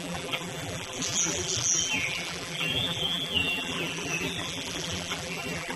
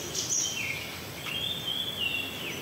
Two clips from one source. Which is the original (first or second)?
second